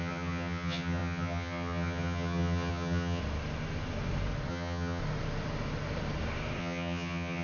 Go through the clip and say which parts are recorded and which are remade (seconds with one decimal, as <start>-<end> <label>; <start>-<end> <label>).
0.0-3.2 remade; 3.2-4.5 recorded; 4.5-5.0 remade; 5.0-6.6 recorded; 6.6-7.4 remade